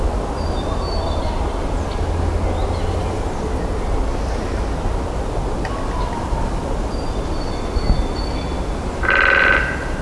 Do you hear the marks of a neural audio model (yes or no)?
no